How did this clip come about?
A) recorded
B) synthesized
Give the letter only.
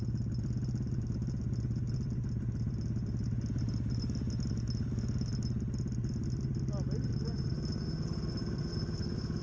A